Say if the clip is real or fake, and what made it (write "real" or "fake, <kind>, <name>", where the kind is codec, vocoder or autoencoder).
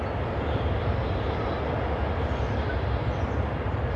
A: real